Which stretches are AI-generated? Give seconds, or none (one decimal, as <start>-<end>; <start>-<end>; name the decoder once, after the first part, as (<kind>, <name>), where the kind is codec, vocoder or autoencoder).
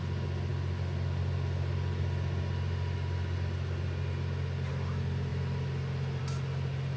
none